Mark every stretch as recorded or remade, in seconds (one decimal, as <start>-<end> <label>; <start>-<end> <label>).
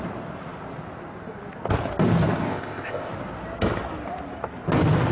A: 0.0-2.5 recorded; 2.5-3.1 remade; 3.1-5.1 recorded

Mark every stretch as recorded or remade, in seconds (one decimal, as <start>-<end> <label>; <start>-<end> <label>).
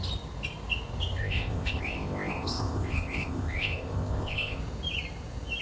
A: 0.0-1.2 recorded; 1.2-4.6 remade; 4.6-5.6 recorded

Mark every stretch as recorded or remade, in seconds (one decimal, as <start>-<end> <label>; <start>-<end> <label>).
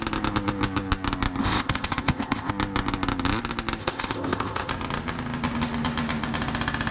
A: 0.0-1.4 recorded; 1.4-2.5 remade; 2.5-3.8 recorded; 3.8-4.7 remade; 4.7-6.9 recorded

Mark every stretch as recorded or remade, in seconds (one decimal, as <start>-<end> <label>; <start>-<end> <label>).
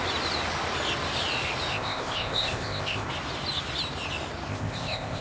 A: 0.0-1.7 recorded; 1.7-3.1 remade; 3.1-4.5 recorded; 4.5-5.2 remade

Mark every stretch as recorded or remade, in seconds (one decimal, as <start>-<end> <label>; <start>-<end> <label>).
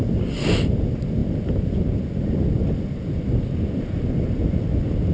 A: 0.0-5.1 recorded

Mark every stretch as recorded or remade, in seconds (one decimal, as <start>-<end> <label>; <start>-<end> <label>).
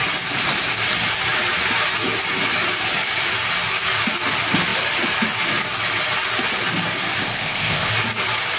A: 0.0-7.2 recorded; 7.2-7.9 remade; 7.9-8.6 recorded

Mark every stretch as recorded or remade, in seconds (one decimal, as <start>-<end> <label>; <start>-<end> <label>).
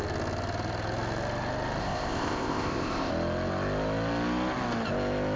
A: 0.0-1.8 recorded; 1.8-3.1 remade; 3.1-5.4 recorded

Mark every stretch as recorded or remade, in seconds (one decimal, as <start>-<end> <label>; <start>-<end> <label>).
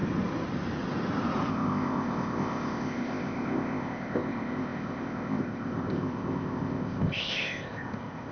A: 0.0-1.5 recorded; 1.5-8.3 remade